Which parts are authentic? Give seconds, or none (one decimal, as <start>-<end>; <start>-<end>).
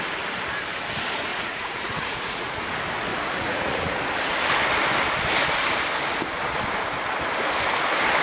0.0-1.3; 2.6-3.1; 4.0-8.2